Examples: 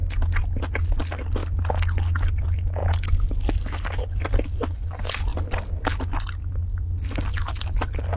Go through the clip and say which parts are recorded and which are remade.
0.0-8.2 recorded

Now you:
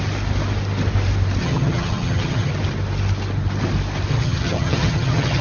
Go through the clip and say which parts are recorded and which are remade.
0.0-1.4 recorded; 1.4-2.5 remade; 2.5-4.1 recorded; 4.1-5.4 remade

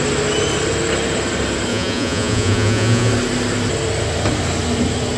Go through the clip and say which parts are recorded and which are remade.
0.0-1.7 recorded; 1.7-3.1 remade; 3.1-5.2 recorded